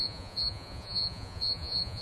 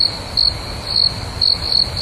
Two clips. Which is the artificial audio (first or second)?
first